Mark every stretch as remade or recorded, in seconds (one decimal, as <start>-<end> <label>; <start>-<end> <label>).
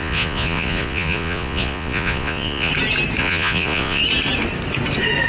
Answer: 0.0-2.7 remade; 2.7-3.2 recorded; 3.2-4.0 remade; 4.0-5.3 recorded